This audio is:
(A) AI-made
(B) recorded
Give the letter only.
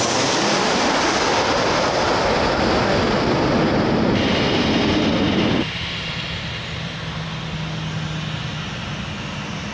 B